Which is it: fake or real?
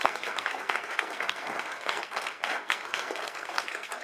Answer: fake